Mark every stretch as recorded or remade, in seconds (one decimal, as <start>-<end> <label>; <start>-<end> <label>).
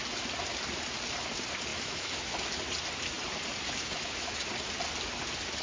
0.0-1.7 recorded; 1.7-2.5 remade; 2.5-3.8 recorded; 3.8-4.4 remade; 4.4-5.6 recorded